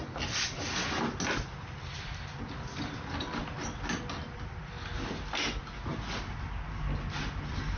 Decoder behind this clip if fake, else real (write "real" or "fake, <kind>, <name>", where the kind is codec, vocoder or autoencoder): real